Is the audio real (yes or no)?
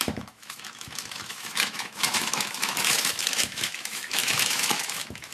no